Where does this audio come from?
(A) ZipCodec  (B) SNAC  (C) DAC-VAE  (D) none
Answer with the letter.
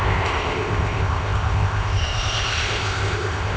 A